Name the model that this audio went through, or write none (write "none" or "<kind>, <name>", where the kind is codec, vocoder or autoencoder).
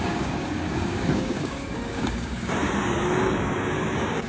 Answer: codec, DAC